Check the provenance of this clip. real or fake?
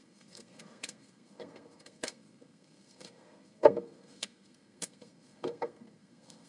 fake